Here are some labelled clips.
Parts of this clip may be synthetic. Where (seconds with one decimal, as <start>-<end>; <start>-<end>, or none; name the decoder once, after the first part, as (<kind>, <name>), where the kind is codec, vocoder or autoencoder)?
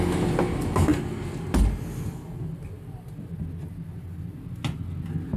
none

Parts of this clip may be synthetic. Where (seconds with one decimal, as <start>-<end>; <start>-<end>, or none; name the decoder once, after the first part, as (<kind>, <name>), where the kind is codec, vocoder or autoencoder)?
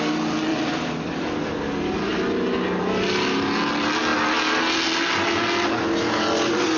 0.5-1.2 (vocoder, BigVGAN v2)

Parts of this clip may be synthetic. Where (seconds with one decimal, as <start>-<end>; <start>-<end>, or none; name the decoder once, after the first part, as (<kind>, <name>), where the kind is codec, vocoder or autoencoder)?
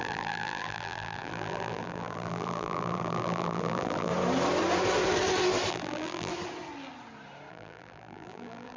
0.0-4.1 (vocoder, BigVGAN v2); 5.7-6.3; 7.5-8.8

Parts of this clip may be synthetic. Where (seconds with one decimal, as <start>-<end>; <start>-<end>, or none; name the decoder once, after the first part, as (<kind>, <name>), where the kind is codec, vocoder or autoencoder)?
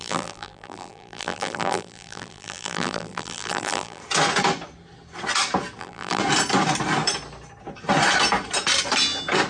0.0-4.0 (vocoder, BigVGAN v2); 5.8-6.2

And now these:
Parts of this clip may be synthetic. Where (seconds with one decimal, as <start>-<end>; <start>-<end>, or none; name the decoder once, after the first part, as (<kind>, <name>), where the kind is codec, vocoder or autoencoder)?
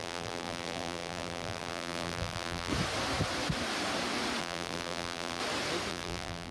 0.0-2.7 (vocoder, BigVGAN v2); 4.4-5.4; 5.9-6.5